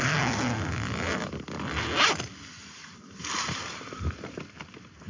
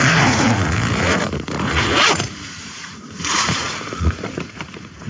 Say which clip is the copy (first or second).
second